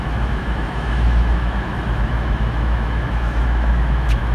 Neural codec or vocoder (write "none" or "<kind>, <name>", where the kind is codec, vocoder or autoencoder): autoencoder, DAC-VAE